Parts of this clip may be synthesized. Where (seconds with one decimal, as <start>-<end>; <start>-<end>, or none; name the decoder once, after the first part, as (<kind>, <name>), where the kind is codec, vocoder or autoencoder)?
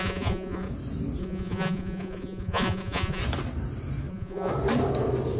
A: 0.0-0.7 (vocoder, Vocos); 1.2-3.2; 4.1-4.5